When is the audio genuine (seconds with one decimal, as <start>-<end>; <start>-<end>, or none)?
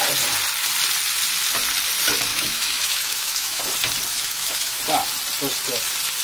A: 0.0-2.3; 3.6-4.1; 4.8-6.2